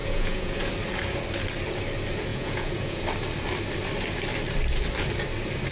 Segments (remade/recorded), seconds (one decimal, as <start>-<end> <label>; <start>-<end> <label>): 0.0-0.7 remade; 0.7-2.3 recorded; 2.3-3.0 remade; 3.0-5.7 recorded